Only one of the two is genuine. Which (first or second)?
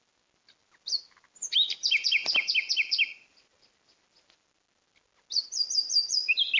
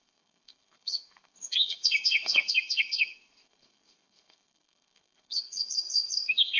first